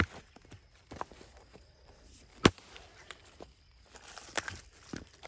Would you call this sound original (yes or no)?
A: yes